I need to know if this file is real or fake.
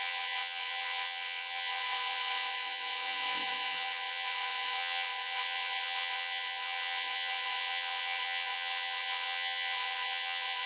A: fake